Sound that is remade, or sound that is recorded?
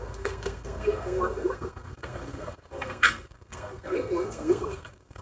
remade